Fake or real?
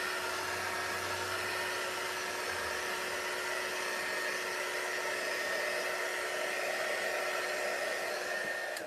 real